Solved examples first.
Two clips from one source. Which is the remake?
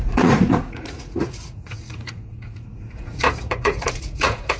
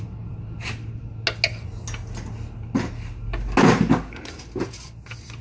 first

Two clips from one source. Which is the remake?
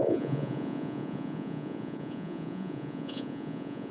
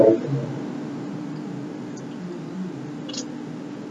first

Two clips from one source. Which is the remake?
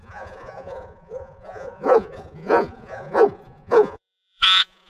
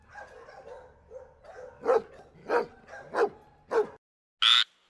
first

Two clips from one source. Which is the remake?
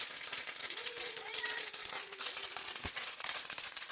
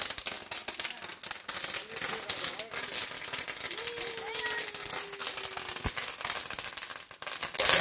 first